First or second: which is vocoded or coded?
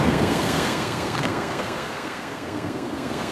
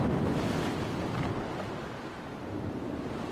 first